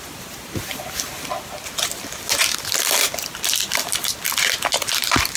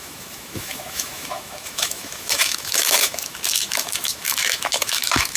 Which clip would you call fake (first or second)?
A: second